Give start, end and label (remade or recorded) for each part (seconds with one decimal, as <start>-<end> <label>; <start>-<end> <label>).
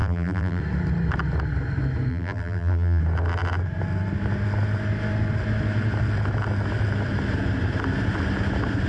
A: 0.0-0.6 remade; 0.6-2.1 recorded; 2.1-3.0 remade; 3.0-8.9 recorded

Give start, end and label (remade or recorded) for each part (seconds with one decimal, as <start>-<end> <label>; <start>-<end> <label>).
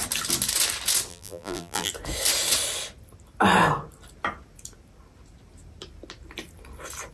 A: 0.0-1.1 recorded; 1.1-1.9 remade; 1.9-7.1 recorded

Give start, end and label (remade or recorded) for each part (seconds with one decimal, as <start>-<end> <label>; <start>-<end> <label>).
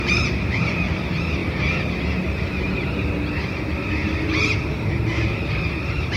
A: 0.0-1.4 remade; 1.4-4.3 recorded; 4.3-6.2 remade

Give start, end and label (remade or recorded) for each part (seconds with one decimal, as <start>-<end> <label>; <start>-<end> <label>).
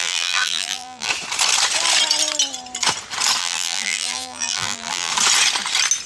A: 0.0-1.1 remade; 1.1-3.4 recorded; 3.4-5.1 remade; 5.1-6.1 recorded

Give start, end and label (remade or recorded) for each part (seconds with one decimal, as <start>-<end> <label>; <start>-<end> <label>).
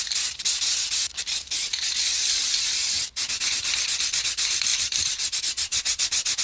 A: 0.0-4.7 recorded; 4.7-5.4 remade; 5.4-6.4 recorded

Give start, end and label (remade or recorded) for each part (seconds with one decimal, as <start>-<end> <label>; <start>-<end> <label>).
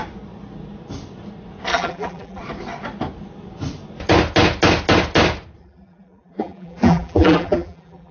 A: 0.0-1.7 recorded; 1.7-2.4 remade; 2.4-5.6 recorded; 5.6-8.1 remade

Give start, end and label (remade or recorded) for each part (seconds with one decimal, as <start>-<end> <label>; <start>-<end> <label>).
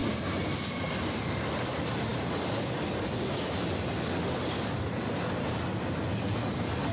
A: 0.0-6.9 recorded